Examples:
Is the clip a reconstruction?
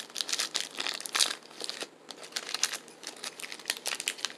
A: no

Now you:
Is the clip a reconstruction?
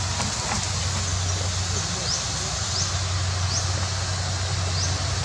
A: no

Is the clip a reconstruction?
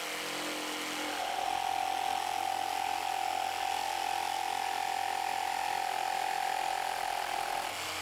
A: no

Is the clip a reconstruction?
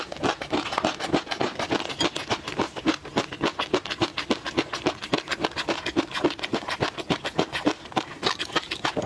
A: no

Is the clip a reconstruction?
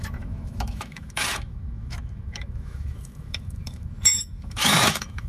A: yes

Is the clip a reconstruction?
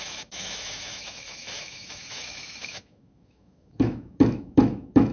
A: yes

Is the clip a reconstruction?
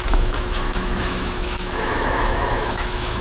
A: yes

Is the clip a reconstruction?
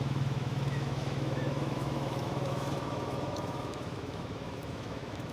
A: yes